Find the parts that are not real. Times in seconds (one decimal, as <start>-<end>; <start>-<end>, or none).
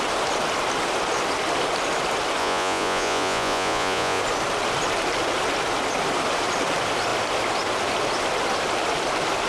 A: 2.4-4.2